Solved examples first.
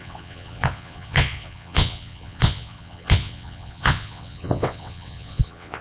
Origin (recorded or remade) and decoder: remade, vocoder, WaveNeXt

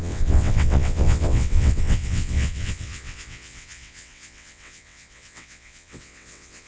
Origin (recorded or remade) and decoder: remade, vocoder, WaveNeXt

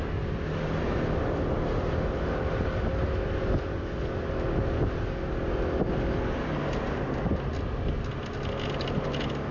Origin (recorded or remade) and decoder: recorded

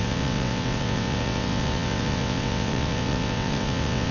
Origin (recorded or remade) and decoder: remade, vocoder, WaveNeXt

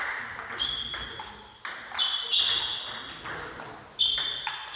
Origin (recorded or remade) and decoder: recorded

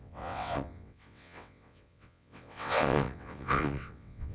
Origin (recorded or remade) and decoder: remade, vocoder, WaveNeXt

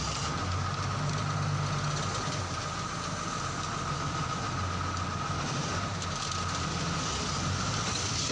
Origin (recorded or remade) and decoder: recorded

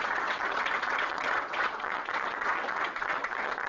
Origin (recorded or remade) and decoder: remade, vocoder, WaveNeXt